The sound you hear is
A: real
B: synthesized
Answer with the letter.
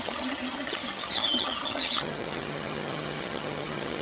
B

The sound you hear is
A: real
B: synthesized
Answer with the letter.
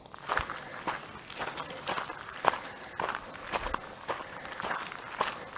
A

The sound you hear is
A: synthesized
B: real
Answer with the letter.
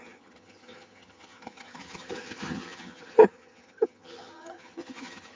A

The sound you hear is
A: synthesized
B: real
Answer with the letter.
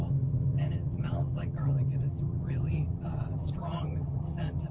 A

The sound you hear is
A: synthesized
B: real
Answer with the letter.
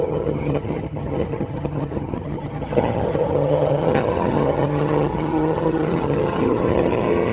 A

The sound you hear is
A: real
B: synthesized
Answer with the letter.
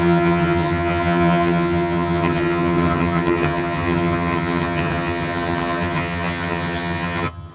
B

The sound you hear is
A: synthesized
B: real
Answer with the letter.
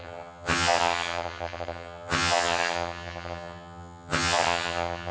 A